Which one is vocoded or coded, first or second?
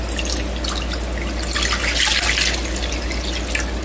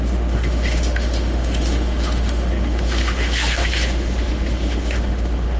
second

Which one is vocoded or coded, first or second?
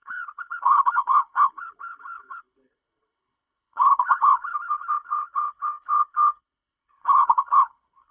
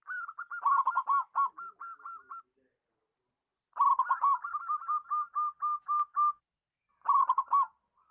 first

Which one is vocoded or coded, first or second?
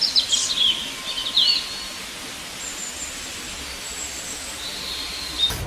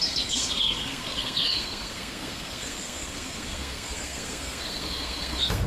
second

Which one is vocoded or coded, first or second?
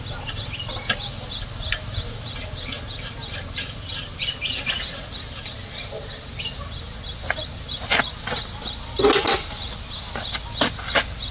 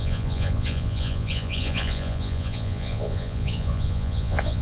second